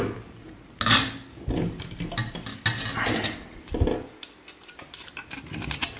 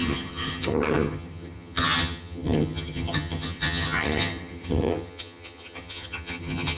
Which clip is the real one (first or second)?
first